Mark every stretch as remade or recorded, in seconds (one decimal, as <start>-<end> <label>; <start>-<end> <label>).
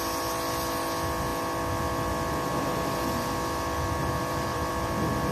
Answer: 0.0-4.0 recorded; 4.0-4.7 remade; 4.7-5.3 recorded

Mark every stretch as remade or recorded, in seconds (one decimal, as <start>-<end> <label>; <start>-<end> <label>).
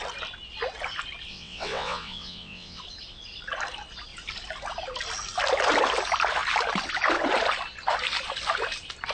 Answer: 0.0-1.3 recorded; 1.3-2.8 remade; 2.8-9.1 recorded